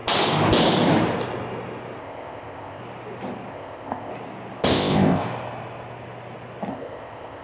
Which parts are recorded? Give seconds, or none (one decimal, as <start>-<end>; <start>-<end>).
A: 0.0-2.0; 2.8-3.5; 4.1-4.6; 5.2-6.7